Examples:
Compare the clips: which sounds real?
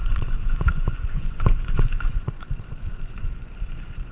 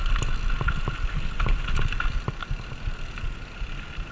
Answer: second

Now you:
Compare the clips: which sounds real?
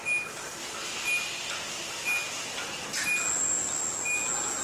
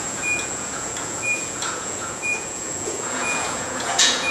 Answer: first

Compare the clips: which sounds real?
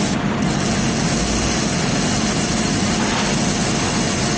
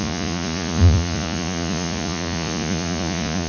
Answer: first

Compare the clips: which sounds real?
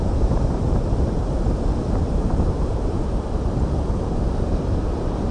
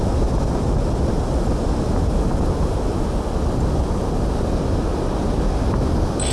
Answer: second